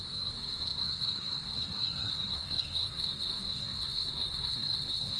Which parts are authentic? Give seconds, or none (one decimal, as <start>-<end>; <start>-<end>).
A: none